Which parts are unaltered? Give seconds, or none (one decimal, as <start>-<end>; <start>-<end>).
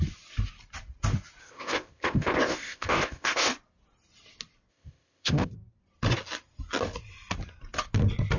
0.0-1.4; 3.5-4.7; 5.5-8.4